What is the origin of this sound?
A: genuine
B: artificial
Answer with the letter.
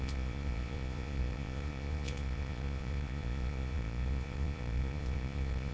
B